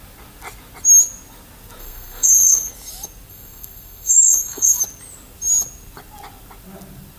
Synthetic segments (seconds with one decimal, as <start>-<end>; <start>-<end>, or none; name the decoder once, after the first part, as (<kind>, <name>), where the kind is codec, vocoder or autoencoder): 1.8-2.7 (codec, SNAC); 3.3-4.8